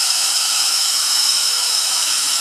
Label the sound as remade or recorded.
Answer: remade